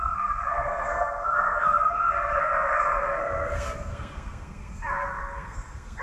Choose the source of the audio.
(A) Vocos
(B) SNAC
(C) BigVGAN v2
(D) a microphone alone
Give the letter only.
B